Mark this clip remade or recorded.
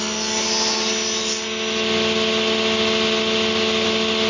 recorded